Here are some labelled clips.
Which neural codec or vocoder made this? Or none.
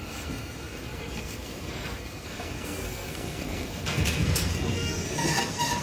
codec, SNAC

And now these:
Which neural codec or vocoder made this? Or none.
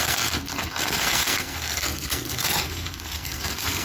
codec, SNAC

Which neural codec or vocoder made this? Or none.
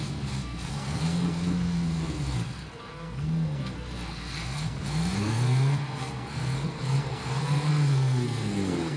codec, SNAC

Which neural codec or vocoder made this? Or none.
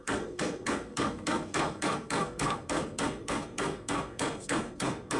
codec, SNAC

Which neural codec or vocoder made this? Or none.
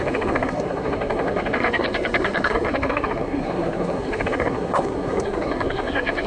codec, SNAC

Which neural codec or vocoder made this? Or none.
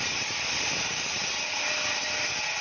none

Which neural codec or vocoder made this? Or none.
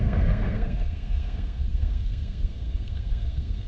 codec, SNAC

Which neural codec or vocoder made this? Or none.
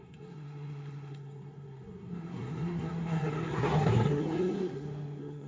codec, SNAC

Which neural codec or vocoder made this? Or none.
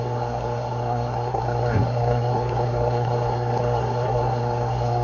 codec, SNAC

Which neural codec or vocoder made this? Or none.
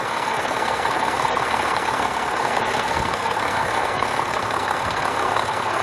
codec, SNAC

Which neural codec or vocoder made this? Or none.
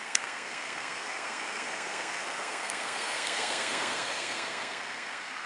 codec, SNAC